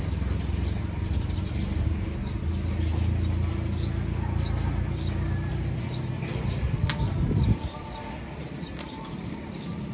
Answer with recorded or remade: recorded